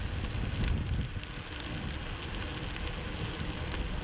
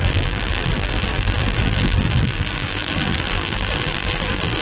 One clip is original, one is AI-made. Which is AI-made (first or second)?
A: second